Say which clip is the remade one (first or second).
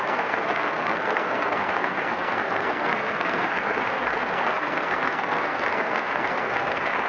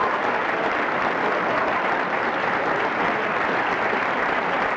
first